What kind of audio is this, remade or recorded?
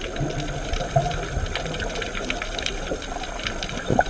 recorded